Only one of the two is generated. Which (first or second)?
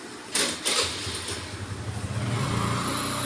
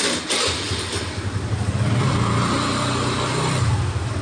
second